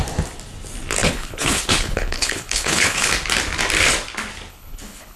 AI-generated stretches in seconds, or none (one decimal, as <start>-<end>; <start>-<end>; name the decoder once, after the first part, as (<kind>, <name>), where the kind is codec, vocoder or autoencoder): 1.0-3.1 (codec, HILCodec); 4.5-5.2